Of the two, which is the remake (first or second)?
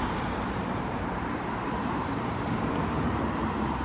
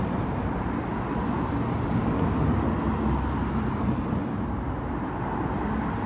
first